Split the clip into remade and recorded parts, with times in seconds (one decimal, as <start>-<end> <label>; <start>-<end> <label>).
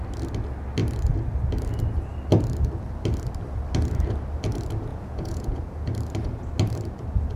0.0-4.9 recorded; 4.9-5.6 remade; 5.6-7.4 recorded